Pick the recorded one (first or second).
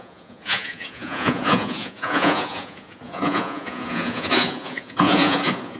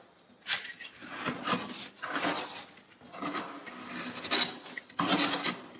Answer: second